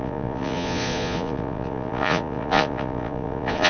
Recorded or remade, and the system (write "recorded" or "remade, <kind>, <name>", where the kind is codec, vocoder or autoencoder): remade, vocoder, Vocos